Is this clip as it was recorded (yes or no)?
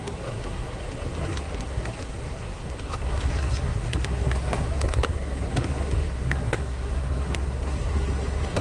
no